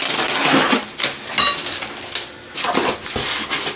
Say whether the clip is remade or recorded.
recorded